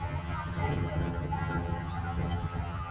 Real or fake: fake